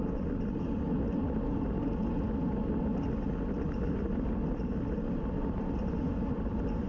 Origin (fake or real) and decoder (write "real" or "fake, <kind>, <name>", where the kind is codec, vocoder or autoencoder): real